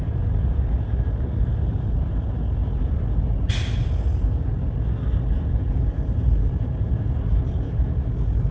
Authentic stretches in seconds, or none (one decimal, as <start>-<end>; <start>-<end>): 0.0-8.5